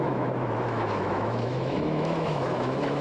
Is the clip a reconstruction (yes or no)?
yes